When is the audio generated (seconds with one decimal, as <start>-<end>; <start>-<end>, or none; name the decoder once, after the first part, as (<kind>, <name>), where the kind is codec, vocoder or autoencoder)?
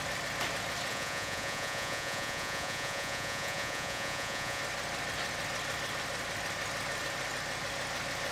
0.9-4.6 (vocoder, Vocos)